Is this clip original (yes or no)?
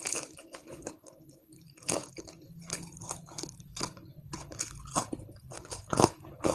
no